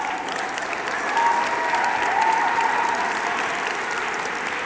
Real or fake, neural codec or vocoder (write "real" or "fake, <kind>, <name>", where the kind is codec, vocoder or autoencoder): real